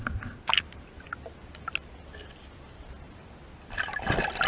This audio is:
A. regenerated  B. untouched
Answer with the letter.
B